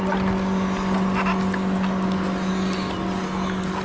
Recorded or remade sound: recorded